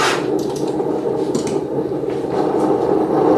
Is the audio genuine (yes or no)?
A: yes